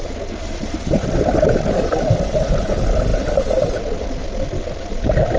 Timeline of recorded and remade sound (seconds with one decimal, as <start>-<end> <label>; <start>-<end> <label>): 0.0-5.4 recorded